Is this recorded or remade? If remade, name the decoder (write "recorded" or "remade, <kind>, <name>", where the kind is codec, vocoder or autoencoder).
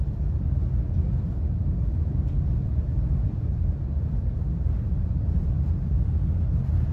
remade, vocoder, BigVGAN v2